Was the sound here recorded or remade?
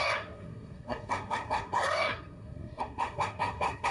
remade